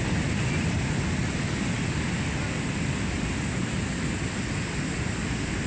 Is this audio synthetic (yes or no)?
no